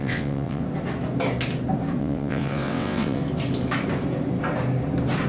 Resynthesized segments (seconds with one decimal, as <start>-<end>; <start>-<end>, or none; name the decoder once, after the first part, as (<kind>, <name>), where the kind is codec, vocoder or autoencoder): 0.0-0.6 (vocoder, WaveNeXt); 2.0-3.2